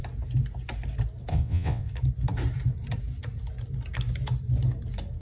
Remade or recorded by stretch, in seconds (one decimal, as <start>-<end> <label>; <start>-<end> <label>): 0.0-1.3 recorded; 1.3-1.9 remade; 1.9-5.2 recorded